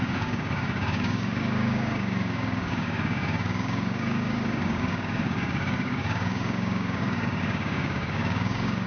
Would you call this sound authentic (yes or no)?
no